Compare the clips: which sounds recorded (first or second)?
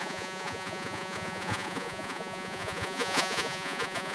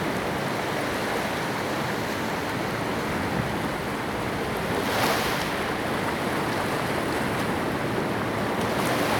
second